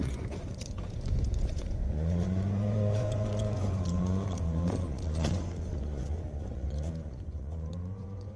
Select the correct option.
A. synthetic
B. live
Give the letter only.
A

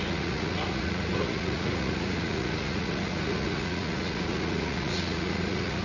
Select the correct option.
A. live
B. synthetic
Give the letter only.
B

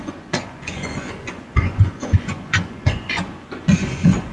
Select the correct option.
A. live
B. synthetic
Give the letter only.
B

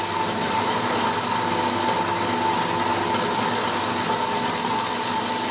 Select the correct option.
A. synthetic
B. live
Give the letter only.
B